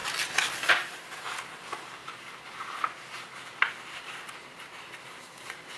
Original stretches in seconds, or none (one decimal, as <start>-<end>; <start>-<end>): 0.0-2.0; 4.9-5.8